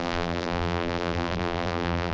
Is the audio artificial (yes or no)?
yes